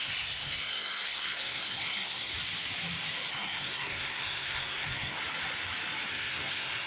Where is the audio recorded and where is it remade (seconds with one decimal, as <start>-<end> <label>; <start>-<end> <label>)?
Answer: 0.0-2.3 remade; 2.3-3.3 recorded; 3.3-5.2 remade; 5.2-6.1 recorded; 6.1-6.9 remade

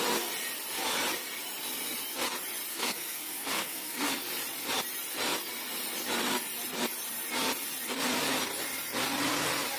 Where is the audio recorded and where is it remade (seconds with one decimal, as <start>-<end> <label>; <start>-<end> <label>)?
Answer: 0.0-2.7 recorded; 2.7-4.1 remade; 4.1-9.8 recorded

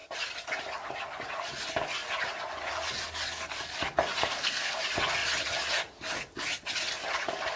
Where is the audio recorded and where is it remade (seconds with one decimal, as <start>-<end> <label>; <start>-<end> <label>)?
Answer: 0.0-4.2 recorded; 4.2-4.8 remade; 4.8-7.6 recorded

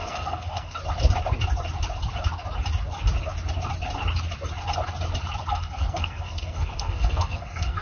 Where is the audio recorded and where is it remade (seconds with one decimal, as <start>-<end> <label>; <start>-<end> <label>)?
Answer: 0.0-0.8 remade; 0.8-5.5 recorded; 5.5-7.8 remade

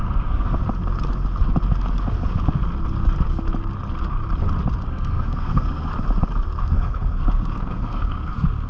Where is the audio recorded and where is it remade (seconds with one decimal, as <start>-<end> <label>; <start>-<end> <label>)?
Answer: 0.0-0.6 remade; 0.6-4.9 recorded; 4.9-5.9 remade; 5.9-6.6 recorded; 6.6-8.7 remade

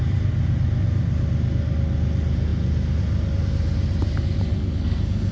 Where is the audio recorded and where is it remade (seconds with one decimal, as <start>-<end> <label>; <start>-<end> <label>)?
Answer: 0.0-4.5 recorded; 4.5-5.3 remade

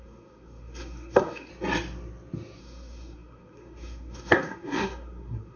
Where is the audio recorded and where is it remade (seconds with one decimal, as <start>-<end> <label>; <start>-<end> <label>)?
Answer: 0.0-1.5 remade; 1.5-2.6 recorded; 2.6-5.6 remade

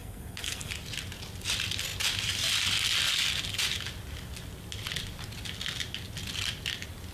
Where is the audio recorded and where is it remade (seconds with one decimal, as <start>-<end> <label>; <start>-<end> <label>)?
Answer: 0.0-0.7 remade; 0.7-7.1 recorded